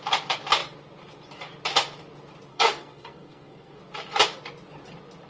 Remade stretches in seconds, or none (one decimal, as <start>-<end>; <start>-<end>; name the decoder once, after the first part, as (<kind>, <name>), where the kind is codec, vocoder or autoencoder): 2.5-3.8 (codec, SNAC)